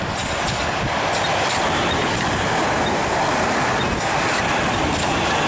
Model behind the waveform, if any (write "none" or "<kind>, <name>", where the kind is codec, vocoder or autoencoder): none